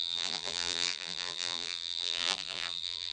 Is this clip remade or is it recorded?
remade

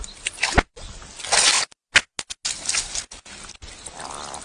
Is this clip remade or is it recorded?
recorded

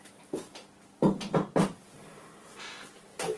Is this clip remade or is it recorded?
recorded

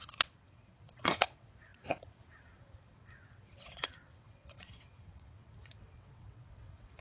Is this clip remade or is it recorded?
remade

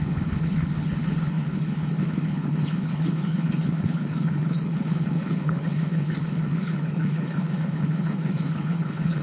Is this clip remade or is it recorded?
remade